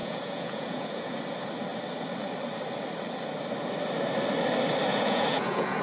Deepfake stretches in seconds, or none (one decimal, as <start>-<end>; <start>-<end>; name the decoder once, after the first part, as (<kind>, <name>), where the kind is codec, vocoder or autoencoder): 0.0-1.2 (vocoder, Vocos); 4.9-5.8